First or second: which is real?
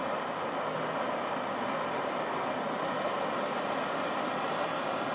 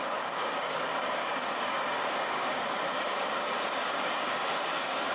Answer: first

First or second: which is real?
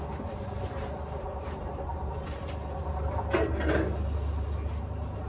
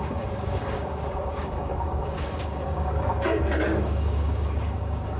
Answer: first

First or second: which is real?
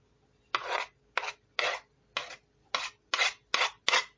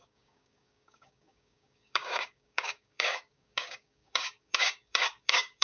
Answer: first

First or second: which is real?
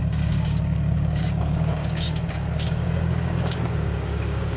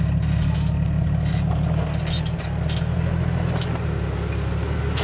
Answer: second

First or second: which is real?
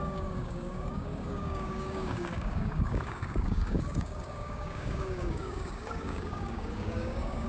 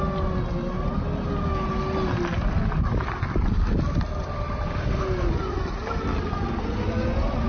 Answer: second